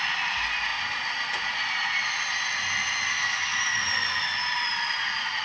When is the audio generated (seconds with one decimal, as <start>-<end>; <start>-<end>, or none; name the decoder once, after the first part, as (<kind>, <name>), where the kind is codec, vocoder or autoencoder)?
3.5-5.4 (vocoder, BigVGAN v2)